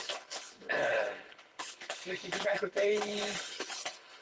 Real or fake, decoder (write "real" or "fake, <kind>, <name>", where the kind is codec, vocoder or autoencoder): fake, codec, HILCodec